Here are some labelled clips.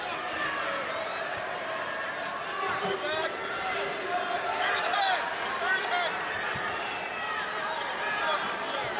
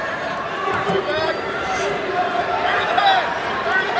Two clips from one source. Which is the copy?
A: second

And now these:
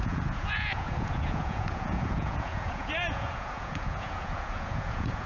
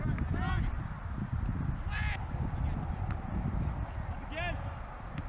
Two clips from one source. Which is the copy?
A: first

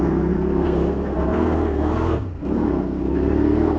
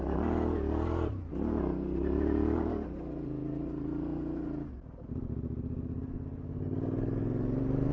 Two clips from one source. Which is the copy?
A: first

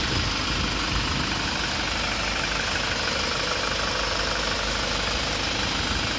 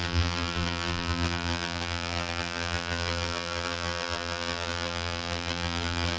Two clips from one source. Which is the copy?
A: second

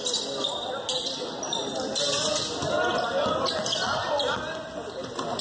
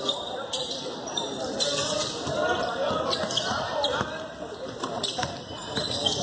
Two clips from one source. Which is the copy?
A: second